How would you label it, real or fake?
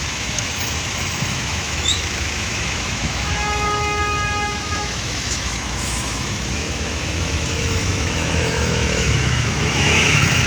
fake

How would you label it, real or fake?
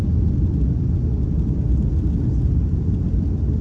real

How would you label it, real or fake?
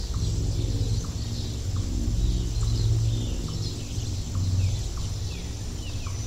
real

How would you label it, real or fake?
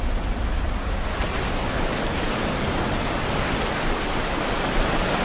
real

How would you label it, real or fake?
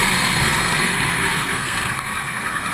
fake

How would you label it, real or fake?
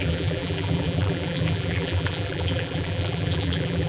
fake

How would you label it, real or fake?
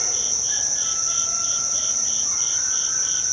real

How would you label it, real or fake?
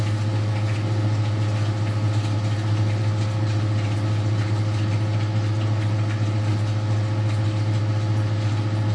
real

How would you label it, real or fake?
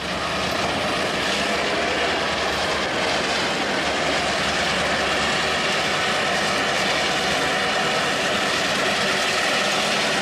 real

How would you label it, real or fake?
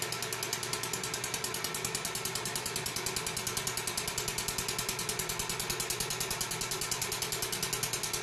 real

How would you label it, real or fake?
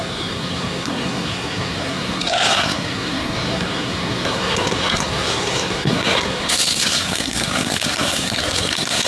fake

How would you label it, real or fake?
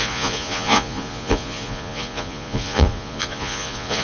fake